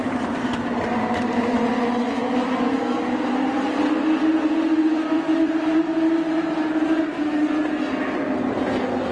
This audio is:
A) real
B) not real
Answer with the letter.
A